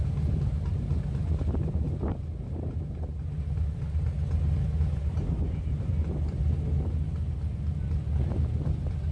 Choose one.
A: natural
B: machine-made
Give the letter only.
A